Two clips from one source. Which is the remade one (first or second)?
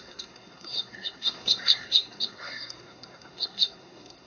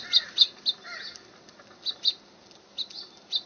first